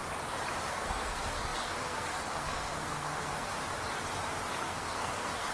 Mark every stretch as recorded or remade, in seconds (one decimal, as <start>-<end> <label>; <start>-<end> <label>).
0.0-0.7 recorded; 0.7-3.5 remade; 3.5-4.5 recorded; 4.5-5.5 remade

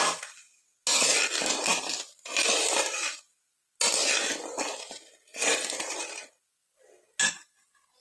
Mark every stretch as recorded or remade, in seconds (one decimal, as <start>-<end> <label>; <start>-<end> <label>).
0.0-8.0 recorded

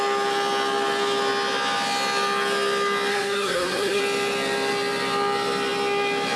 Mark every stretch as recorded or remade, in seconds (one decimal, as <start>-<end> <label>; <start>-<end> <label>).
0.0-3.1 recorded; 3.1-4.0 remade; 4.0-6.4 recorded

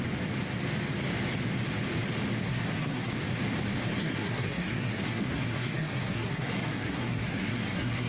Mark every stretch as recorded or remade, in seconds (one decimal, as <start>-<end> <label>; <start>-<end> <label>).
0.0-2.4 recorded; 2.4-3.1 remade; 3.1-4.0 recorded; 4.0-8.1 remade

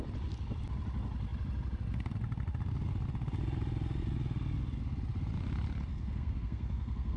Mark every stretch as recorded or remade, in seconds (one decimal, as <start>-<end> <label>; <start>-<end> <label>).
0.0-5.9 recorded; 5.9-7.2 remade

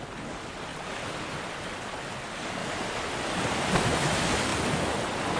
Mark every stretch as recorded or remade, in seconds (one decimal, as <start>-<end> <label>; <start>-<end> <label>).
0.0-5.4 recorded

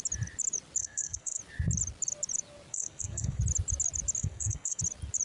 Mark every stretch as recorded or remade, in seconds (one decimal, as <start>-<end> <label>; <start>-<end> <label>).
0.0-0.8 recorded; 0.8-1.4 remade; 1.4-2.7 recorded; 2.7-3.4 remade; 3.4-4.2 recorded; 4.2-4.8 remade; 4.8-5.2 recorded